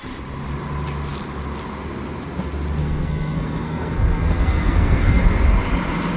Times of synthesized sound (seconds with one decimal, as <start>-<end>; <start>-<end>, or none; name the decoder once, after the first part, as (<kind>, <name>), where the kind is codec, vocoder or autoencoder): 2.8-5.2 (codec, SNAC)